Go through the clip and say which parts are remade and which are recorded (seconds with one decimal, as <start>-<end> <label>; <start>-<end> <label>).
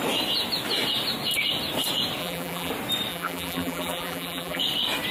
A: 0.0-2.2 recorded; 2.2-2.7 remade; 2.7-3.1 recorded; 3.1-4.6 remade; 4.6-5.1 recorded